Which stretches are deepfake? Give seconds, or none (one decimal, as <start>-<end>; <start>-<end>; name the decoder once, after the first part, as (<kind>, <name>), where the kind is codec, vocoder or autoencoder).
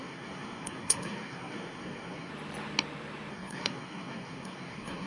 0.0-2.3 (codec, SNAC); 3.3-5.1